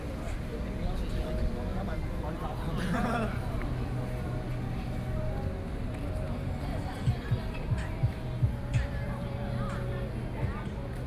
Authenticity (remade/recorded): recorded